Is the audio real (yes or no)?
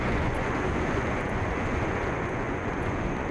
no